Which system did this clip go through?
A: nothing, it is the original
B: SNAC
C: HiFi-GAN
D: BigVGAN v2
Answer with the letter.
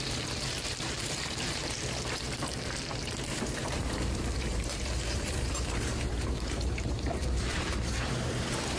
D